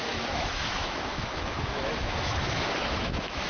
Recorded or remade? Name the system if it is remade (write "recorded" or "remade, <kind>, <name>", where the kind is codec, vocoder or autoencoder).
remade, autoencoder, DAC-VAE